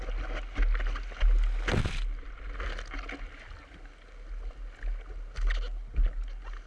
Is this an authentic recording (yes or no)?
yes